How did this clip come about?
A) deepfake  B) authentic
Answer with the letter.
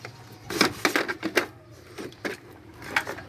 B